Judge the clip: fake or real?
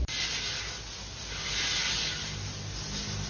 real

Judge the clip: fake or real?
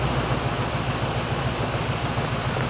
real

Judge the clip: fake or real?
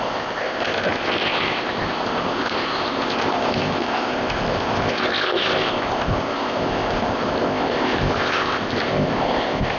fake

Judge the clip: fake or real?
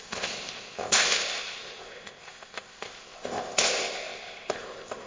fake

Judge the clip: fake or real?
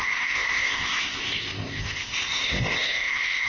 fake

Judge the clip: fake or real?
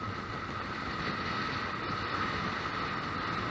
real